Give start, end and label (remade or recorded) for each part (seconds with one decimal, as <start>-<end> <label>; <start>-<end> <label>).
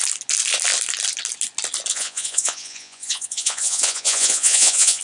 0.0-1.9 recorded; 1.9-5.0 remade